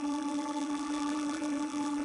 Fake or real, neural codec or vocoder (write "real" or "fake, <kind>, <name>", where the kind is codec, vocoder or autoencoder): fake, vocoder, BigVGAN v2